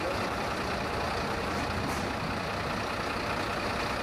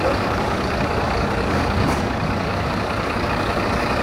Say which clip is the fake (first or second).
second